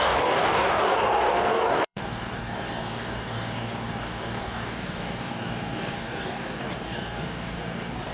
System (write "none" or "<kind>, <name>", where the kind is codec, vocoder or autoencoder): codec, DAC